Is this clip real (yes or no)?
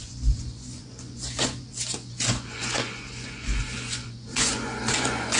no